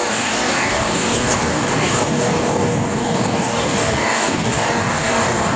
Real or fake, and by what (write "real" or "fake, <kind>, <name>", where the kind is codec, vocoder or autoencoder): fake, codec, DAC